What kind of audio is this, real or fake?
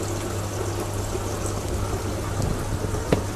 real